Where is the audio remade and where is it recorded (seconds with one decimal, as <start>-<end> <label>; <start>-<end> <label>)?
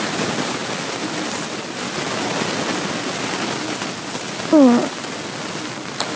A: 0.0-6.2 recorded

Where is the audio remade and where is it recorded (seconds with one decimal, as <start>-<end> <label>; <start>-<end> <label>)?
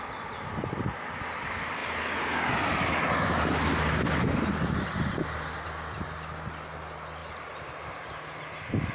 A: 0.0-8.9 recorded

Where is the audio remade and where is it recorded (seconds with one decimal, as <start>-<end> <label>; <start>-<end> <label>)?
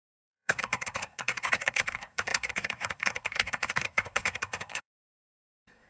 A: 0.0-5.9 remade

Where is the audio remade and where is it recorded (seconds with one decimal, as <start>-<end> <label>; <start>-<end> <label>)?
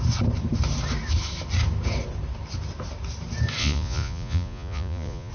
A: 0.0-3.6 recorded; 3.6-5.3 remade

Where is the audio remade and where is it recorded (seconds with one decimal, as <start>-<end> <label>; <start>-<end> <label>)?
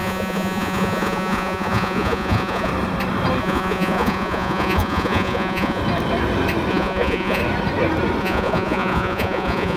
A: 0.0-2.7 remade; 2.7-3.4 recorded; 3.4-5.8 remade; 5.8-6.7 recorded; 6.7-7.4 remade; 7.4-8.2 recorded; 8.2-9.8 remade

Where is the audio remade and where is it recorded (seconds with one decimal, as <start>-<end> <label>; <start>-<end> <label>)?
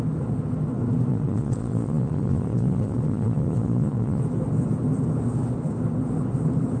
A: 0.0-1.1 recorded; 1.1-4.2 remade; 4.2-6.8 recorded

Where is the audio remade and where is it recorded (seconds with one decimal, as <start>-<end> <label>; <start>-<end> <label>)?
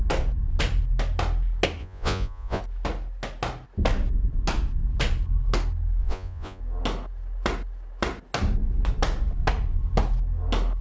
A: 0.0-1.8 recorded; 1.8-2.6 remade; 2.6-6.0 recorded; 6.0-6.6 remade; 6.6-10.8 recorded